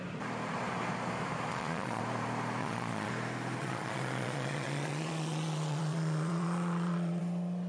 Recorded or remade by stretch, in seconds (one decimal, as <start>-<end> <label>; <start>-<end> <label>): 0.0-1.5 recorded; 1.5-2.0 remade; 2.0-2.6 recorded; 2.6-3.1 remade; 3.1-3.6 recorded; 3.6-7.2 remade; 7.2-7.7 recorded